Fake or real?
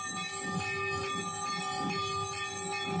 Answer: real